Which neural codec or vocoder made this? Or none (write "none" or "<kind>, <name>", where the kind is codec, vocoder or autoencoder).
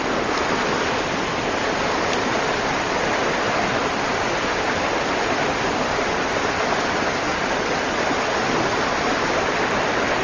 none